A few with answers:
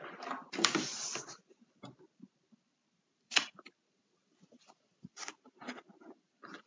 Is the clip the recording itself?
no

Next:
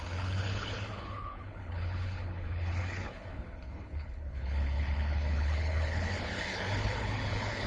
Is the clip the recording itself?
no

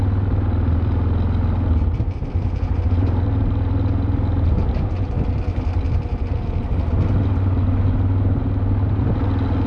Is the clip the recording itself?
yes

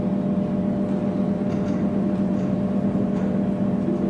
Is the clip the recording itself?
yes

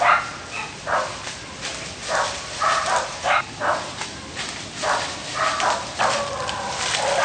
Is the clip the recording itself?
no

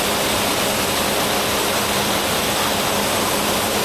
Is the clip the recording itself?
yes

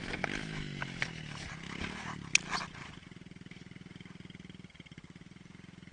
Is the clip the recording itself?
yes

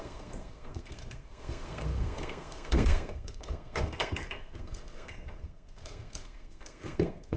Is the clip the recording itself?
no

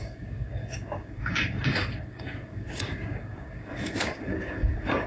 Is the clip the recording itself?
no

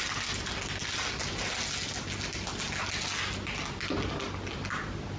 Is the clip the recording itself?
yes